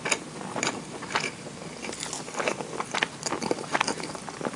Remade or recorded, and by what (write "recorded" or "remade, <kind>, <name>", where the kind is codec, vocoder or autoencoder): remade, vocoder, BigVGAN v2